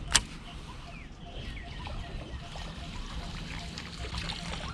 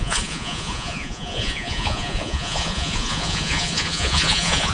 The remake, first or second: second